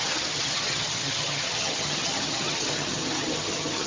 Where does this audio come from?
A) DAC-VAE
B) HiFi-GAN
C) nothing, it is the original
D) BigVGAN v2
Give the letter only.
B